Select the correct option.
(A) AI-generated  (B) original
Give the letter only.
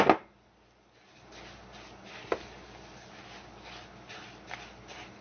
B